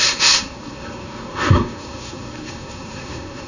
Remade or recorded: remade